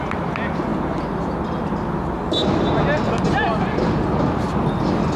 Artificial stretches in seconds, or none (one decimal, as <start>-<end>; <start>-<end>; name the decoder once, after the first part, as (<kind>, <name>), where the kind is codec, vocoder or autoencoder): none